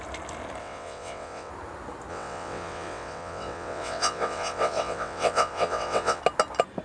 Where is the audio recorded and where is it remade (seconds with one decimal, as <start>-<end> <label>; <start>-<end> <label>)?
0.0-0.6 recorded; 0.6-1.5 remade; 1.5-2.1 recorded; 2.1-6.2 remade; 6.2-6.8 recorded